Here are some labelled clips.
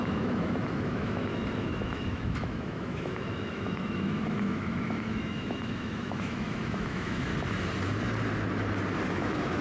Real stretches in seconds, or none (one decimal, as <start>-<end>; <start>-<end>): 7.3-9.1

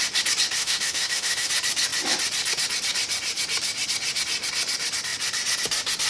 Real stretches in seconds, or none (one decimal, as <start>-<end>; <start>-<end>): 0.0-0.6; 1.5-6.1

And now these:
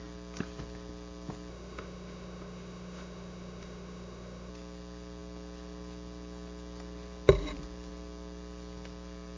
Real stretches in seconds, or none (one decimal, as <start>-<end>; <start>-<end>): 0.0-1.5; 4.5-9.4

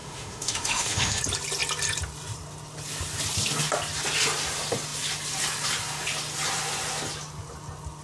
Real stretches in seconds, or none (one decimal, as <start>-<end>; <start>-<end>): 1.2-8.0

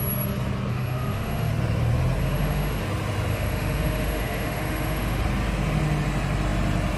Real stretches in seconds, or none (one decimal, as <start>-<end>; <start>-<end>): 0.0-0.7; 1.5-2.2; 2.8-3.3; 5.2-7.0

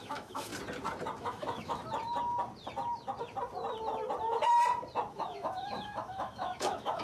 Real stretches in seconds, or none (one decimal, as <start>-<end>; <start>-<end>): 0.5-1.2; 1.8-5.1

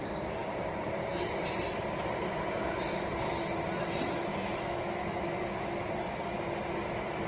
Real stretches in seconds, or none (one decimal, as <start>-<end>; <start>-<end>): 0.0-4.3; 5.9-7.3

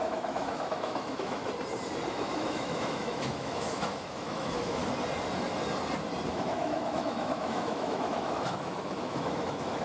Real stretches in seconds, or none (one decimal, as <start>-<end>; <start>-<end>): 1.4-2.1; 4.8-6.3